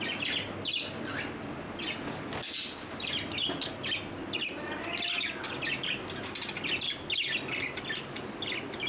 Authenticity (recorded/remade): recorded